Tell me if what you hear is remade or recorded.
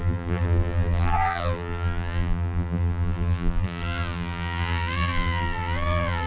remade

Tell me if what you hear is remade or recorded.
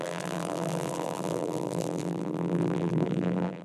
remade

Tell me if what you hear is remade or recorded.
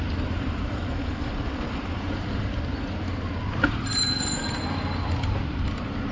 remade